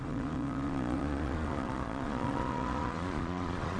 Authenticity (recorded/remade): remade